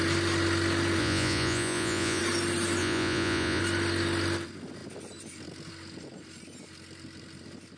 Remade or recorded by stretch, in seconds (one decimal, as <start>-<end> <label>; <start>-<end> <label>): 0.0-1.0 recorded; 1.0-2.2 remade; 2.2-2.8 recorded; 2.8-3.6 remade; 3.6-7.8 recorded